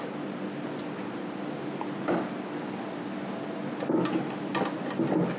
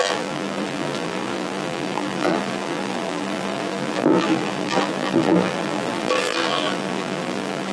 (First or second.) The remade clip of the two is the second